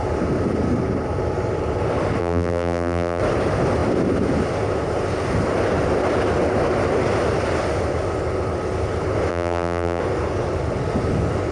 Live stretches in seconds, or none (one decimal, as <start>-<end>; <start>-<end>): 0.0-2.2; 3.2-9.3; 10.0-11.5